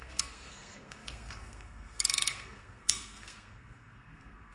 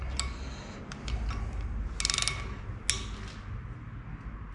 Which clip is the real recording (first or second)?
second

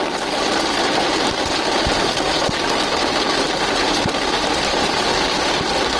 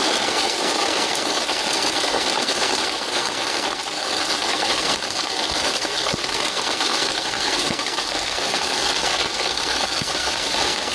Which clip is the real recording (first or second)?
first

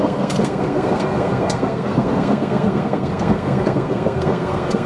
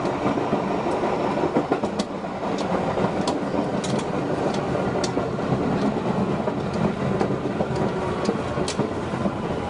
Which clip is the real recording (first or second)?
second